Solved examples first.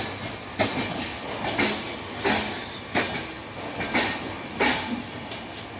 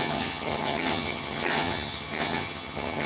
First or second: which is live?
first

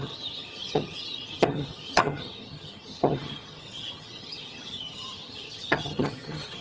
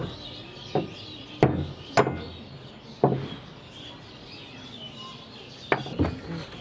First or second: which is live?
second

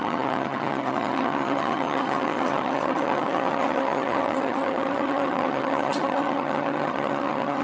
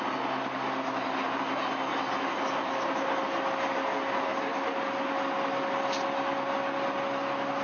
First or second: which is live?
second